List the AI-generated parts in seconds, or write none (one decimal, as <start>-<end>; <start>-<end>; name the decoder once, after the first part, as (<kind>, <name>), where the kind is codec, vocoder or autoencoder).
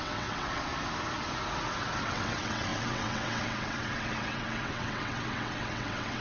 0.0-0.7 (vocoder, WaveNeXt); 2.0-6.2